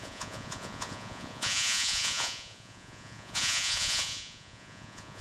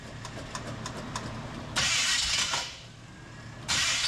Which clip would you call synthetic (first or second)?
first